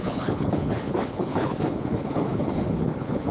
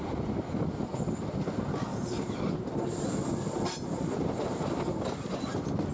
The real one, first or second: second